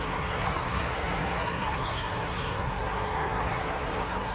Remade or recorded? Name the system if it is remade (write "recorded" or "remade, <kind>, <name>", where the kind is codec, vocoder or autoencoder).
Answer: remade, codec, SNAC